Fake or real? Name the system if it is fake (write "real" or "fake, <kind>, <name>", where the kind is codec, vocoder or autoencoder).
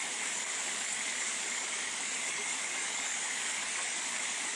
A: fake, codec, DAC